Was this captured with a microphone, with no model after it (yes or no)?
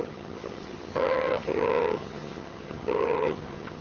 no